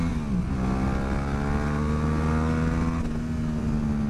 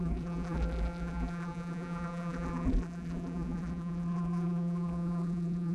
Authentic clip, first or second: first